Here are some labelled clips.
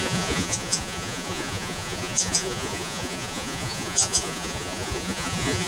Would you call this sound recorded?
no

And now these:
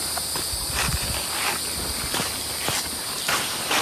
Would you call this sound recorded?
yes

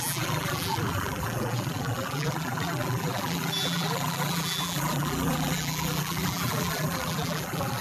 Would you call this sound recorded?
no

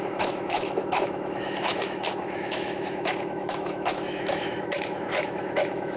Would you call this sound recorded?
no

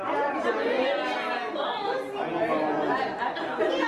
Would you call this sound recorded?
yes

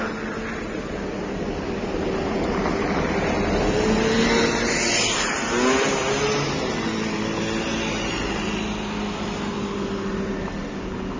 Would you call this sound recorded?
yes